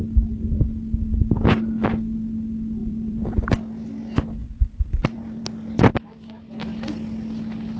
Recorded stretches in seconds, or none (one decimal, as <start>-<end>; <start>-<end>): 0.0-2.8; 3.5-4.4; 5.4-7.8